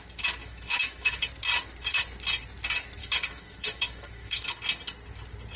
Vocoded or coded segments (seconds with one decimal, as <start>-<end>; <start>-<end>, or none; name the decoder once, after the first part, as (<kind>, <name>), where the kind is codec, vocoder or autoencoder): 0.4-1.2 (autoencoder, DAC-VAE); 3.0-4.5